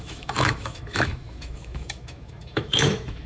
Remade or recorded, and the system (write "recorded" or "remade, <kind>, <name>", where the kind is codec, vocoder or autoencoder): remade, autoencoder, DAC-VAE